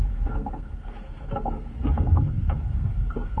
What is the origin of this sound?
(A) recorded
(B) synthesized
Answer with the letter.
B